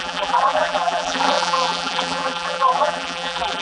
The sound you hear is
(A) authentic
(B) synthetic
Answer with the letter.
B